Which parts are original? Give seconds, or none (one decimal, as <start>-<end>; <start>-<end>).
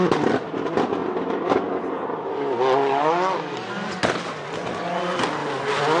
0.0-6.0